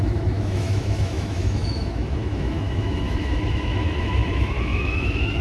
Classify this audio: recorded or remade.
remade